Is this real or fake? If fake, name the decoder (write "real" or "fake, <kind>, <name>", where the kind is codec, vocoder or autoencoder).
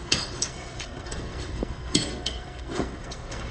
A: fake, codec, SNAC